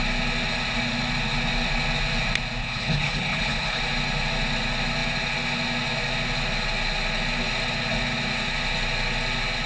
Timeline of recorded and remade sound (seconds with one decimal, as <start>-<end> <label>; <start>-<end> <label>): 0.0-2.6 recorded; 2.6-3.8 remade; 3.8-9.7 recorded